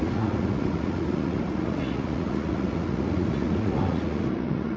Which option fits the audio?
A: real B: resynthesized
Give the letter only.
B